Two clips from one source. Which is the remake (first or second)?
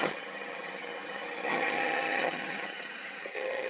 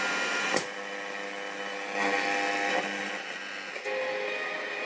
first